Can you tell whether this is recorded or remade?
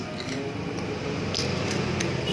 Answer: recorded